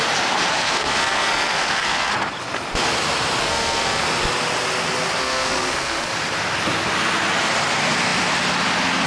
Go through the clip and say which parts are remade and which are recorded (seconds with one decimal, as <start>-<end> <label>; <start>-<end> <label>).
0.0-0.6 recorded; 0.6-2.1 remade; 2.1-3.4 recorded; 3.4-4.0 remade; 4.0-5.2 recorded; 5.2-6.1 remade; 6.1-9.1 recorded